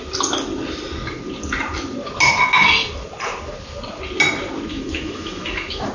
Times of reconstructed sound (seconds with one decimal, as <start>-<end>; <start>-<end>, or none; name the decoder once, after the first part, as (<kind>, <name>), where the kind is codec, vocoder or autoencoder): 4.7-5.9 (autoencoder, DAC-VAE)